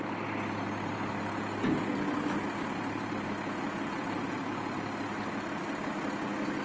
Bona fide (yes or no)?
yes